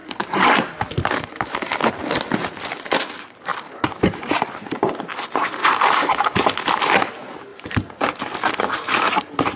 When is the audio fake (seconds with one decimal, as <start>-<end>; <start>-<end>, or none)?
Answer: 0.0-0.9; 3.5-4.9; 5.6-6.8; 7.5-9.6